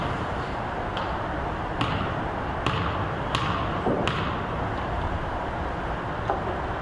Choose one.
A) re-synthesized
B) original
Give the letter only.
B